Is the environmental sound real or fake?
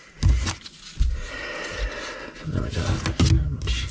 real